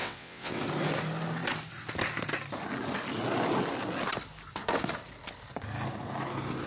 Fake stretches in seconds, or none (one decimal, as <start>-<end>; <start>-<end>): 0.0-0.6